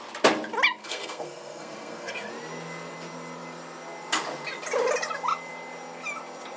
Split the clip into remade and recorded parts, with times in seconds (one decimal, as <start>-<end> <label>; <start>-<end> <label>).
0.0-0.8 recorded; 0.8-2.3 remade; 2.3-6.6 recorded